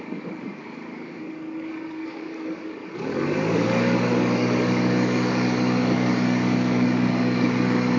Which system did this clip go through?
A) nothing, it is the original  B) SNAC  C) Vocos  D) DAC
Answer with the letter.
D